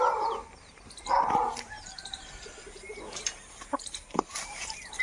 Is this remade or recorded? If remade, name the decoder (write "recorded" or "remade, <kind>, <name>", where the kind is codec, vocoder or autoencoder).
recorded